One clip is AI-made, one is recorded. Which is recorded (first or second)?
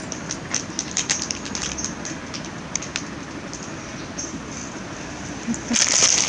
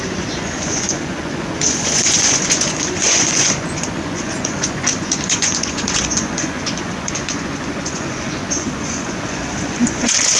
first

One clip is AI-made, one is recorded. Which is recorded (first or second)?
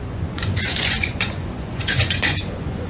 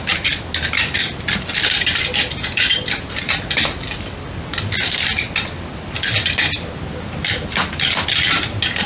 second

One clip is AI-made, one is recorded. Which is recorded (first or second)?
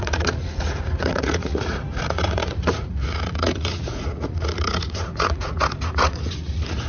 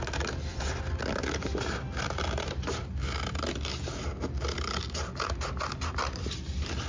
second